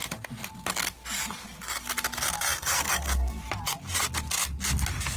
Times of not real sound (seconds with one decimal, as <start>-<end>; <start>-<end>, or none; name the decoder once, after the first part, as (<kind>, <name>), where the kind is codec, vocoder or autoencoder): 2.6-3.4 (codec, SNAC)